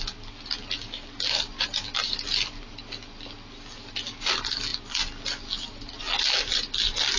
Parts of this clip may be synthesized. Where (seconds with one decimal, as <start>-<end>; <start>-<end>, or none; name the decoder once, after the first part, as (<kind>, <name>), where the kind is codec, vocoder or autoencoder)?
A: none